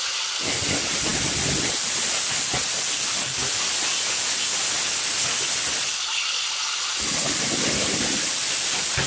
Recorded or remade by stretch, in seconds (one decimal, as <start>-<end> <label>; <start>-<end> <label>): 0.0-9.1 recorded